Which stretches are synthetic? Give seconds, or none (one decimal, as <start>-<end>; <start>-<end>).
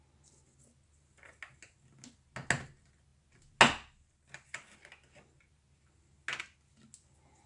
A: none